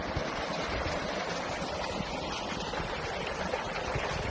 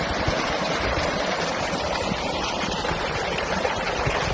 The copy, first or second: second